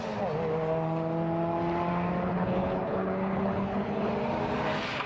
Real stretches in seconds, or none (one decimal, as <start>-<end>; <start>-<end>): 0.0-2.3; 4.1-5.1